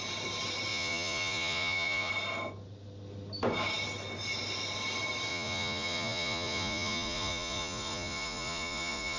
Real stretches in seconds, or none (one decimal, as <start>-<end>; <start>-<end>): 0.0-0.7; 2.1-5.3